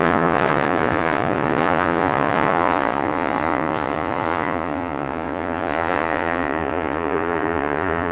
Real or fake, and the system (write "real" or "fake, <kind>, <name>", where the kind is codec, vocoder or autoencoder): fake, vocoder, Vocos